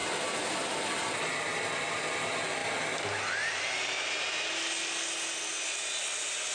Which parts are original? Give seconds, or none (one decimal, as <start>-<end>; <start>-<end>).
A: 0.0-6.5